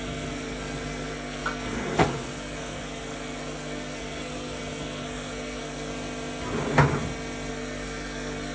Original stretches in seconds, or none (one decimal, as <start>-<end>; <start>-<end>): 5.9-7.5

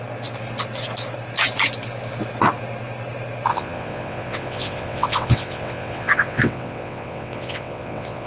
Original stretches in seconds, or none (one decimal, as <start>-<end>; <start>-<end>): 0.0-3.5

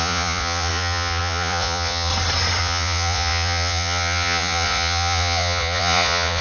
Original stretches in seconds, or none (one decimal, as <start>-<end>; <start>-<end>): 2.1-2.6